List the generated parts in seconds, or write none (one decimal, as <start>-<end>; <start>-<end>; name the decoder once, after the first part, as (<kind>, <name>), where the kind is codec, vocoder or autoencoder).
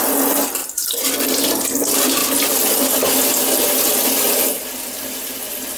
0.6-1.5 (vocoder, BigVGAN v2)